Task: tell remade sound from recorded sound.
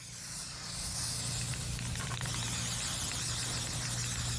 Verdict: recorded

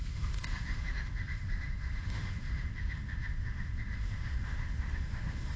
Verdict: remade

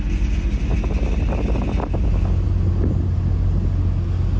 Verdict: recorded